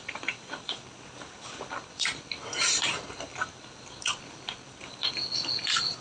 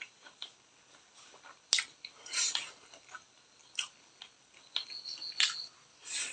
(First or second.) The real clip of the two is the second